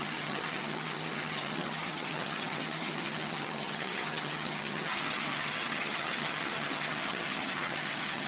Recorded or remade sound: remade